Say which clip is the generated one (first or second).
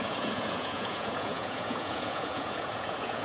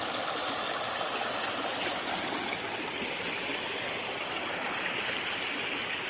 first